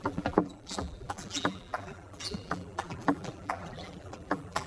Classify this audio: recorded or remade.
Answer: remade